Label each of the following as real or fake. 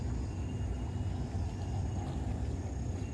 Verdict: real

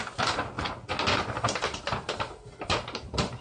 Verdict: real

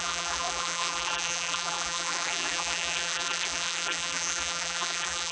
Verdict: fake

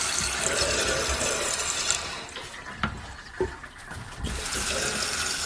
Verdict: fake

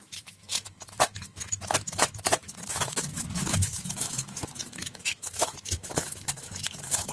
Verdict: fake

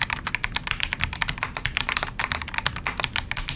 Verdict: real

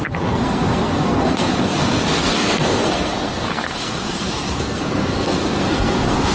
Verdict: fake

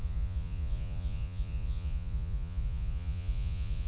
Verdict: fake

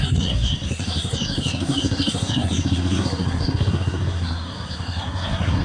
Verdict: fake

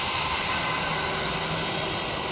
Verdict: real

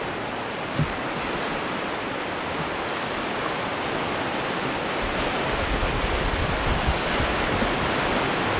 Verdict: real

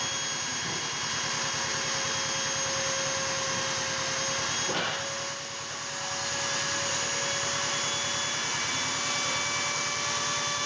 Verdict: real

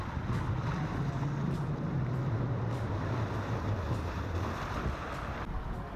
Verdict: real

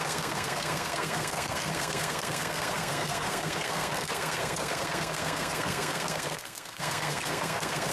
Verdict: fake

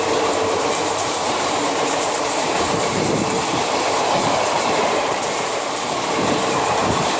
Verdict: fake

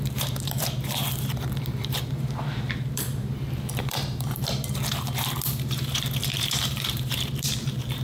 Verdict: fake